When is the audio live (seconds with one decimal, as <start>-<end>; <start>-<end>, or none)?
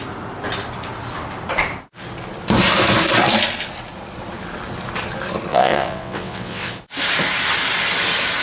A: 0.0-5.5; 6.7-8.4